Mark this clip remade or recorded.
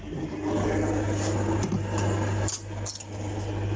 recorded